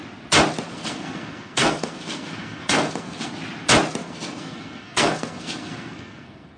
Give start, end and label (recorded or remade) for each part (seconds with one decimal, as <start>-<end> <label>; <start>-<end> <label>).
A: 0.0-0.7 recorded; 0.7-3.3 remade; 3.3-4.0 recorded; 4.0-6.6 remade